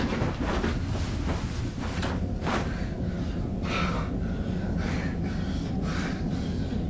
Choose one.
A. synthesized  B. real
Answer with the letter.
B